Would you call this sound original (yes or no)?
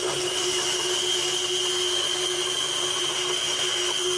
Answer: yes